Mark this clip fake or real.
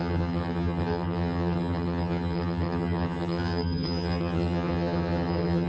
fake